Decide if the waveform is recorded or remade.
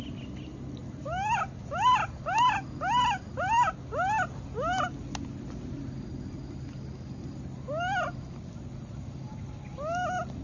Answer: recorded